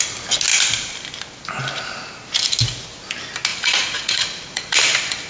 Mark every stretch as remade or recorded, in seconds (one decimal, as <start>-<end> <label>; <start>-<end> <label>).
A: 0.0-3.5 recorded; 3.5-4.7 remade; 4.7-5.3 recorded